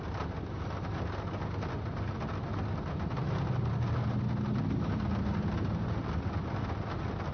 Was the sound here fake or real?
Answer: real